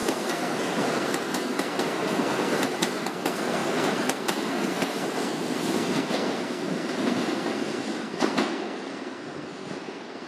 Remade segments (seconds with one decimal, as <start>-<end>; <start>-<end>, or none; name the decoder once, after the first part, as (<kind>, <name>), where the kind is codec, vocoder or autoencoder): 0.0-10.3 (codec, SNAC)